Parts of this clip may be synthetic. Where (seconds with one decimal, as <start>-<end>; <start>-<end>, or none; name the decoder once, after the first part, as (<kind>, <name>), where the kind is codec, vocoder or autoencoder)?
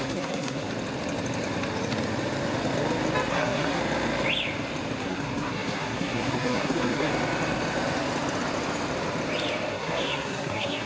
0.0-0.7 (codec, SNAC); 3.3-3.8; 5.0-7.1; 9.7-10.9